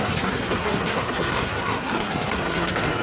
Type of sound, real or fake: fake